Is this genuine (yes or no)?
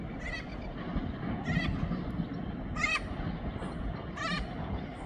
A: yes